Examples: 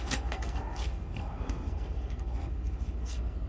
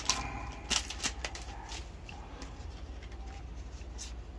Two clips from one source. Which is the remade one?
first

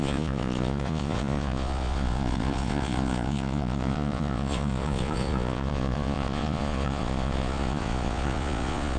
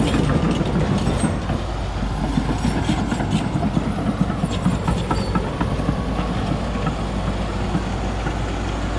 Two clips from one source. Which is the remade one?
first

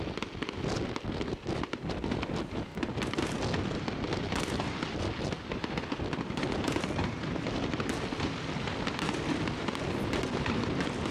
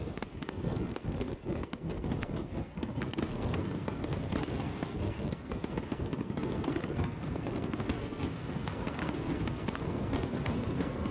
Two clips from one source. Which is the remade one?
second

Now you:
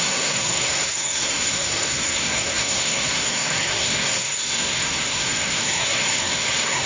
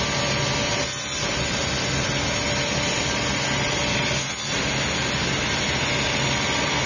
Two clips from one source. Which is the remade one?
first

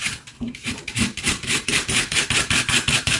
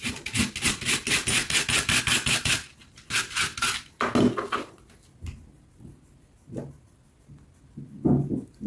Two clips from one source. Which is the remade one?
first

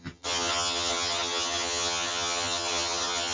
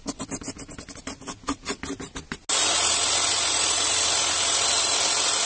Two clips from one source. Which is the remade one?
first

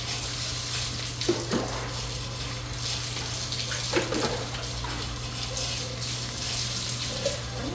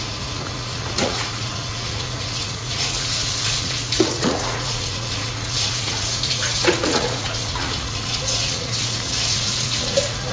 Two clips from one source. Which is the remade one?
second